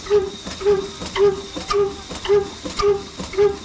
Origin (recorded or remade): recorded